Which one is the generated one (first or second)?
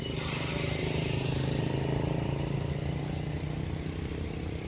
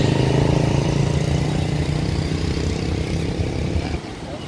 second